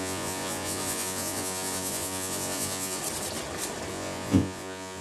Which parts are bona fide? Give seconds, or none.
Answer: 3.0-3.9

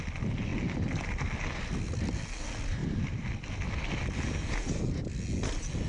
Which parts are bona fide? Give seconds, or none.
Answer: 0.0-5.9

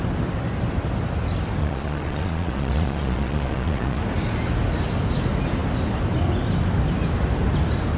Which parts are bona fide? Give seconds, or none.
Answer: 0.0-1.6; 4.0-8.0

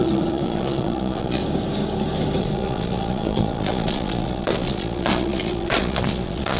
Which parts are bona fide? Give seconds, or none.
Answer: 1.4-2.4

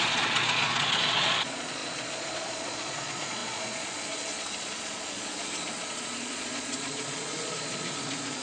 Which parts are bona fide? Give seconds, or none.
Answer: none